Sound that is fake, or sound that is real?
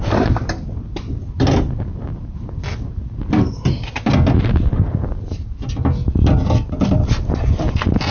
real